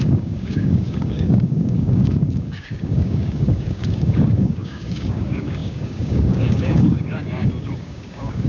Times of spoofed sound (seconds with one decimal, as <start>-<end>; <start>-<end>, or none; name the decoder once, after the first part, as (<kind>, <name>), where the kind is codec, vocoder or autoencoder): 0.0-8.5 (codec, DAC)